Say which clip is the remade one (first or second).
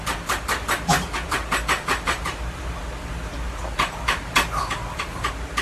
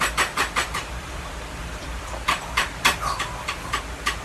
second